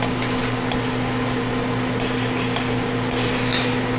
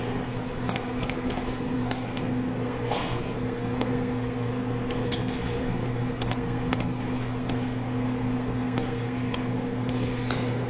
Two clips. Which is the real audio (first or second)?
first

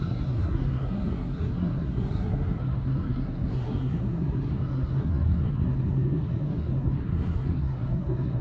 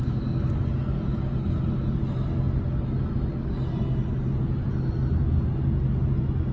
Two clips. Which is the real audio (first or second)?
second